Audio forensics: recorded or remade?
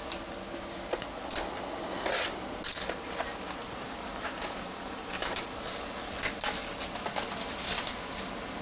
recorded